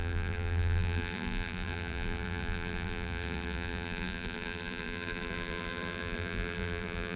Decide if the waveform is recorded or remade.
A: remade